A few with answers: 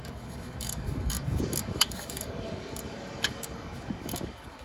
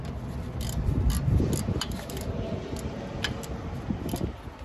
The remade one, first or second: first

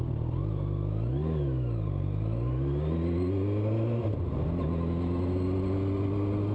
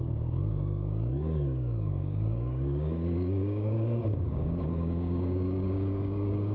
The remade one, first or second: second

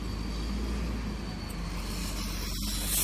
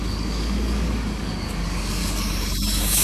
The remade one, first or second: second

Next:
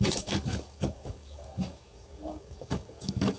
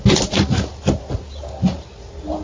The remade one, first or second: first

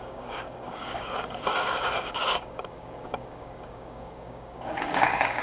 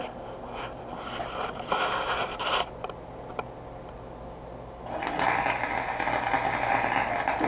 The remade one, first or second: first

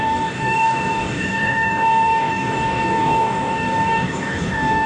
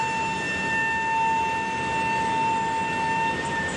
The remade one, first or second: first